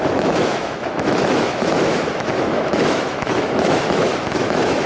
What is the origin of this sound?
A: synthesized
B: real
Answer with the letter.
A